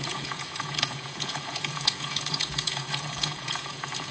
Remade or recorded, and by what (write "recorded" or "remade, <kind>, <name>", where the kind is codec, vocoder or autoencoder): remade, vocoder, Vocos